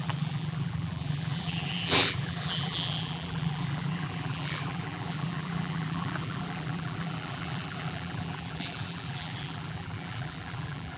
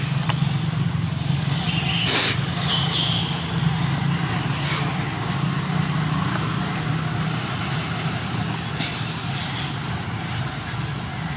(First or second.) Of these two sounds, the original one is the second